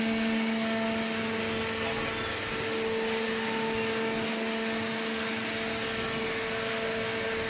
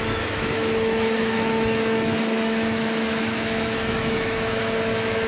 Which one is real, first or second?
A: first